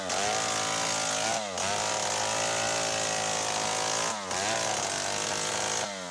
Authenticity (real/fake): real